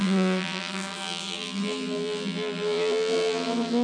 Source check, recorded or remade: remade